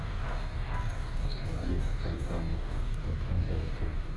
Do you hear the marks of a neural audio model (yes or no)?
yes